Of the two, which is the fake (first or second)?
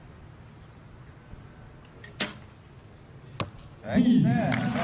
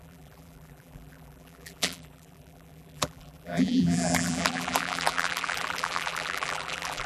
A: second